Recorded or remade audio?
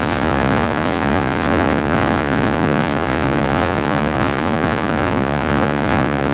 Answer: remade